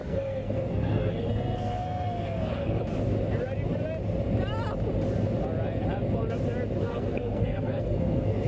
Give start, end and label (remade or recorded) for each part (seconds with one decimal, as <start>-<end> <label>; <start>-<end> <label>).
0.0-2.8 remade; 2.8-6.8 recorded; 6.8-8.5 remade